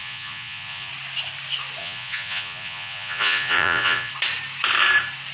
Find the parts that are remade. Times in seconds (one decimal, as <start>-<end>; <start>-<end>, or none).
0.0-0.9; 1.8-4.1